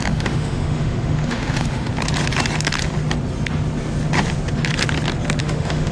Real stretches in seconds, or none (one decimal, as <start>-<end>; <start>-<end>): 1.9-5.4